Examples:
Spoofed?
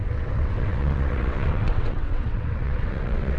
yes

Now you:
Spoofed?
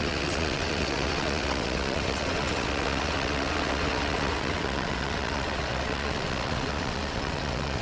yes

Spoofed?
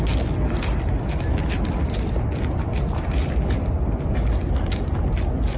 no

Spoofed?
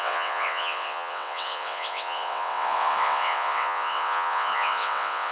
yes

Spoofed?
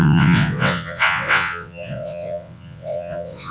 yes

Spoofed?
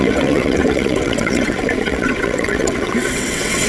yes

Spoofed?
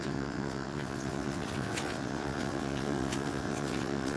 yes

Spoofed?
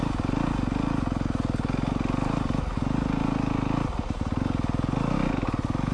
no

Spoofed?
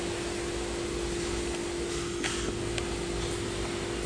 no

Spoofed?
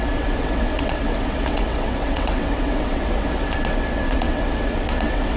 yes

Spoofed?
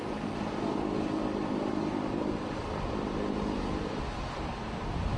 no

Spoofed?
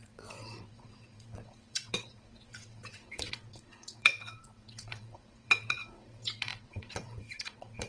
yes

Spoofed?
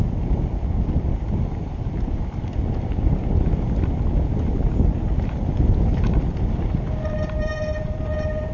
no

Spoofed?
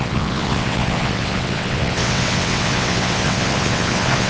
yes